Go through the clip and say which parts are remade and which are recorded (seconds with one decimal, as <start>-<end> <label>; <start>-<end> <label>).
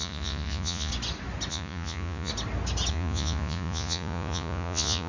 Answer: 0.0-0.9 remade; 0.9-1.5 recorded; 1.5-2.3 remade; 2.3-2.9 recorded; 2.9-5.1 remade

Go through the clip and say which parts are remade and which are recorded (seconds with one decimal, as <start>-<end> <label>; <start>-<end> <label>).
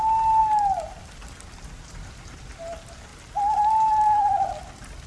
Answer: 0.0-5.1 recorded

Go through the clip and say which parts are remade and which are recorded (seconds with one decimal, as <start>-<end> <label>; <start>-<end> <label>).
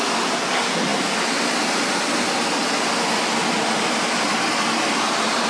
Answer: 0.0-5.5 recorded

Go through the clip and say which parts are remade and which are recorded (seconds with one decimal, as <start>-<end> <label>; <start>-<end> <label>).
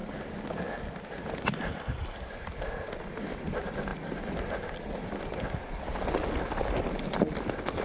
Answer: 0.0-7.8 recorded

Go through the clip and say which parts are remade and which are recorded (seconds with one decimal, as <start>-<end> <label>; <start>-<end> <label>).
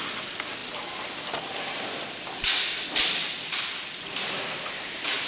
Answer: 0.0-5.3 recorded